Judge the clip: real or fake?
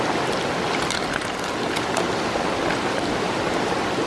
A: real